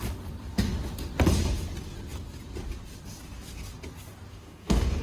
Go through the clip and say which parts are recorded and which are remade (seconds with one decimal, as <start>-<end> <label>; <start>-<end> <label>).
0.0-4.3 recorded; 4.3-5.0 remade